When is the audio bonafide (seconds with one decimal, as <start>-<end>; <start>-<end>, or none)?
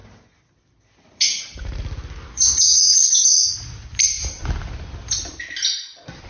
0.0-6.3